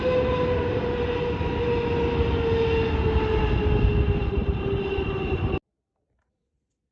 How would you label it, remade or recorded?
recorded